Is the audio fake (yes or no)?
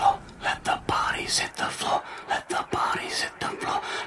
no